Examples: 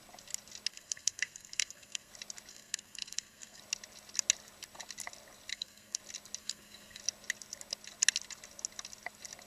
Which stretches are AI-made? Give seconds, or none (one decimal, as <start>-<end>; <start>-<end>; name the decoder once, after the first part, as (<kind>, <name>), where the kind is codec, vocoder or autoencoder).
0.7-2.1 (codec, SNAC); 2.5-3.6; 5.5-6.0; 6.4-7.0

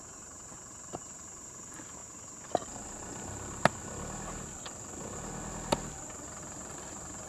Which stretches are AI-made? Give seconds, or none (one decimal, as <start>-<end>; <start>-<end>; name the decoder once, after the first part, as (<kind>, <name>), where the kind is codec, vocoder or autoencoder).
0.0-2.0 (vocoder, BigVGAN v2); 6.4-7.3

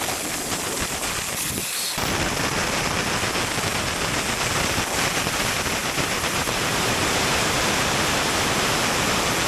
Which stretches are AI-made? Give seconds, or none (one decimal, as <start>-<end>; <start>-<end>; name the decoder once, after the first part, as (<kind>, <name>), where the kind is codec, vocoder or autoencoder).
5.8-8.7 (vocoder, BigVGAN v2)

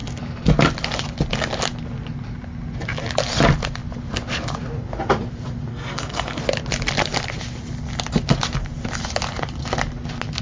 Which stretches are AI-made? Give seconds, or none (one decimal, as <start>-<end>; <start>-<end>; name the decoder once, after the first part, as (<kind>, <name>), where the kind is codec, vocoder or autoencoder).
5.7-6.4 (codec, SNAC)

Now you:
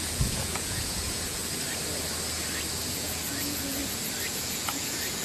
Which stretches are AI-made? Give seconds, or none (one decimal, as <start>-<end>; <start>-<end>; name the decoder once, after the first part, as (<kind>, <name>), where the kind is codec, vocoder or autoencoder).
0.0-1.4 (vocoder, Vocos); 2.9-3.8; 4.3-5.2